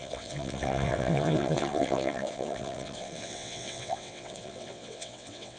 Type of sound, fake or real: fake